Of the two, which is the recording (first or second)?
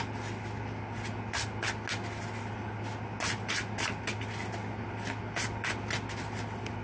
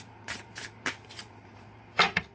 first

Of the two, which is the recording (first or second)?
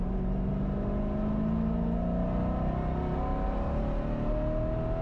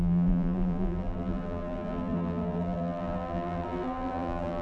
first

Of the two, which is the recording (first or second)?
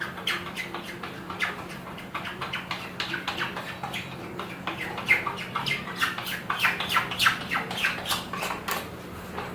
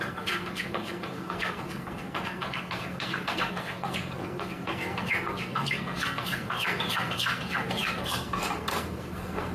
first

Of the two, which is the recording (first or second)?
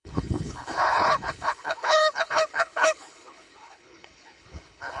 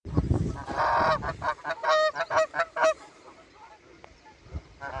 second